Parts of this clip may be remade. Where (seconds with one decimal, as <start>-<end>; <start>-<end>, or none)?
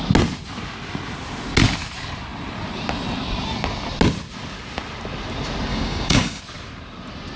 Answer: 5.7-6.4